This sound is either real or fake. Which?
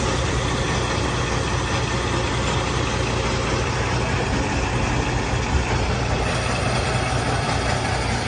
real